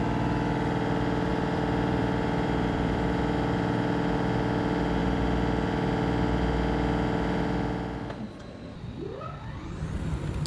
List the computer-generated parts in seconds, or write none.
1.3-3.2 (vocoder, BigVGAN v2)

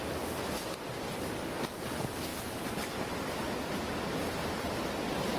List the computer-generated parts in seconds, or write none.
2.3-3.3 (vocoder, BigVGAN v2)

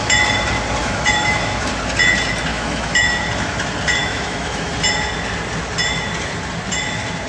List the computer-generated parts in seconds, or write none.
0.8-1.7 (autoencoder, DAC-VAE); 2.5-3.2; 4.0-4.7

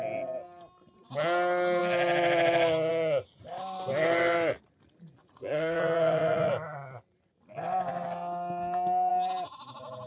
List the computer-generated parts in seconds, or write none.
5.2-6.5 (vocoder, Vocos)

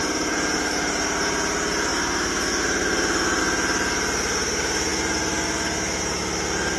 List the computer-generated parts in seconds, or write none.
none